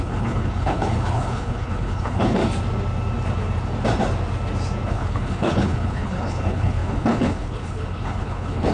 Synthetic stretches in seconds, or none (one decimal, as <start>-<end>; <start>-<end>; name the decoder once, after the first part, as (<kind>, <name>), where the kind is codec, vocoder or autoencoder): 0.0-2.4 (codec, HILCodec); 4.9-8.7